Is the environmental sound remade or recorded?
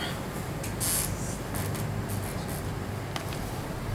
recorded